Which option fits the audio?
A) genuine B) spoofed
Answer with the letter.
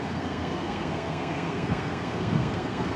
B